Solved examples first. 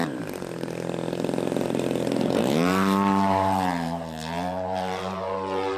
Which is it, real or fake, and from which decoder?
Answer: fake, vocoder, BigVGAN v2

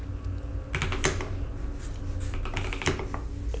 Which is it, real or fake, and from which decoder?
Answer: real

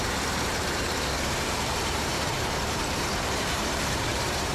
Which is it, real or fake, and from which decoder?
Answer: fake, vocoder, BigVGAN v2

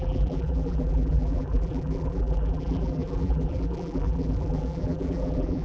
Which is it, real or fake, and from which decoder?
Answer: fake, vocoder, BigVGAN v2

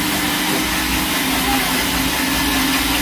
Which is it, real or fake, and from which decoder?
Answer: real